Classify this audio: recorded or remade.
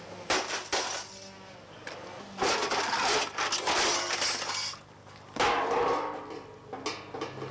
recorded